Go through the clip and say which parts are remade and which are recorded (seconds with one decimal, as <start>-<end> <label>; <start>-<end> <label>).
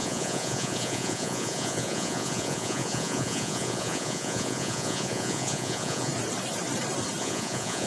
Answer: 0.0-6.1 remade; 6.1-7.2 recorded; 7.2-7.9 remade